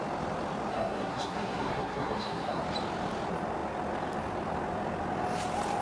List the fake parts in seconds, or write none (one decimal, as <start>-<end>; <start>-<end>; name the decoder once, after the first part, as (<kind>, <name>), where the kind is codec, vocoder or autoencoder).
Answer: 0.7-2.6 (codec, SNAC)